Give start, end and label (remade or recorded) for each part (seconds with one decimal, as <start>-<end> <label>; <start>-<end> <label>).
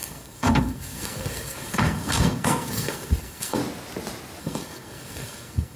0.0-3.6 remade; 3.6-4.4 recorded; 4.4-5.8 remade